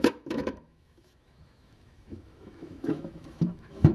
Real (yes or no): no